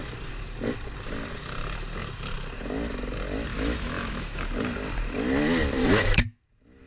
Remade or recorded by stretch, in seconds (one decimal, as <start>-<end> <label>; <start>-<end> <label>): 0.0-3.5 recorded; 3.5-4.4 remade; 4.4-5.8 recorded; 5.8-6.4 remade; 6.4-6.9 recorded